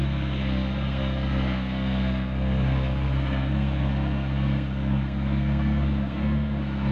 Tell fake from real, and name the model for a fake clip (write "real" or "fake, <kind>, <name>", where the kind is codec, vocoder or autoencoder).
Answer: fake, codec, SNAC